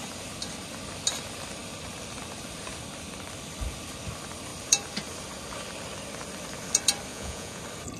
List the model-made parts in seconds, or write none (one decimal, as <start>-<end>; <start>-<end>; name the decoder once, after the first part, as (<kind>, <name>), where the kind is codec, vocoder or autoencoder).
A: 7.1-7.6 (vocoder, Vocos)